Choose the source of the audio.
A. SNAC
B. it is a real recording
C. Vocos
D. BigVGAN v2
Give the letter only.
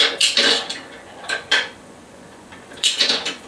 C